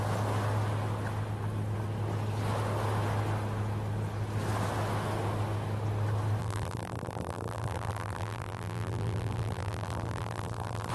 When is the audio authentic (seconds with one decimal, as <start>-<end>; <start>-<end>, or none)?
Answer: 0.0-6.4